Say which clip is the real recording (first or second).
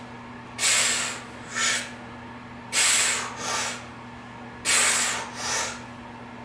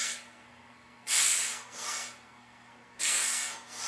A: first